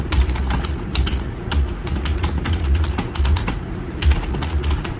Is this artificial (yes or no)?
yes